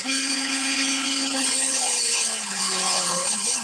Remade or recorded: remade